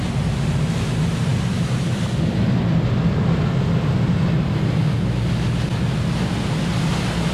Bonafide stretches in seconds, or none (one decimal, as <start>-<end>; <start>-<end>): 0.0-1.3; 3.4-7.3